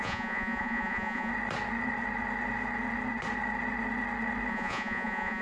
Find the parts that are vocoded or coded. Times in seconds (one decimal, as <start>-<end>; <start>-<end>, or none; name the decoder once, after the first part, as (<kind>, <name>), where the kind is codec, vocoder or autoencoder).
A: 0.0-1.3 (vocoder, Vocos); 4.5-5.4